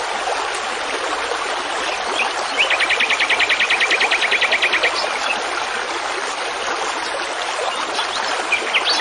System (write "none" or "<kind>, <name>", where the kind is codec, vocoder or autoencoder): none